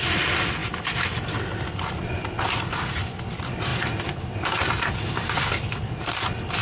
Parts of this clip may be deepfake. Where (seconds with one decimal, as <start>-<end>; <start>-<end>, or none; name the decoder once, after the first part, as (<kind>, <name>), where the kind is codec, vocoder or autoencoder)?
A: 0.6-2.2 (vocoder, BigVGAN v2)

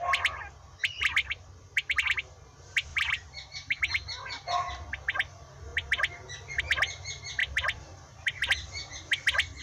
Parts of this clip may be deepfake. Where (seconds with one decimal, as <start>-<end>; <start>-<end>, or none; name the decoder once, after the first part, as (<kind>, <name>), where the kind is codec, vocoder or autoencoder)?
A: 2.9-3.8 (vocoder, BigVGAN v2); 7.4-8.5

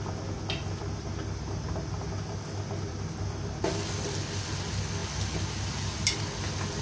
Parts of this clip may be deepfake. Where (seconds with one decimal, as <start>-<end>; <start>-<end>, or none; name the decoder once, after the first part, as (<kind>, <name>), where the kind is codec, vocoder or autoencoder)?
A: none

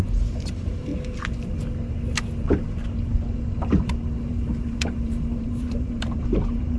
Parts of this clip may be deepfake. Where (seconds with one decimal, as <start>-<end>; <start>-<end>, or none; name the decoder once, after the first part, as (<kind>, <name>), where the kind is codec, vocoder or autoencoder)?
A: 0.0-0.9 (vocoder, BigVGAN v2); 4.3-6.8

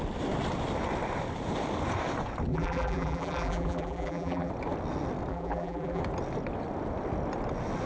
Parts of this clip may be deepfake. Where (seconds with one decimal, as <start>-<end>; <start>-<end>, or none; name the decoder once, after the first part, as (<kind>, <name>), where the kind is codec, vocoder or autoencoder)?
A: 2.5-4.5 (vocoder, BigVGAN v2); 5.3-6.0